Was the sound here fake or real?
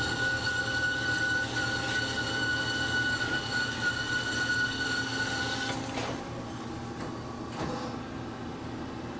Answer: real